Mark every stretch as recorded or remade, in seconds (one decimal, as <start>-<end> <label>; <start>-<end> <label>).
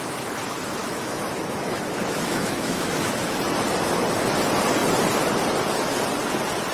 0.0-0.8 recorded; 0.8-3.4 remade; 3.4-6.7 recorded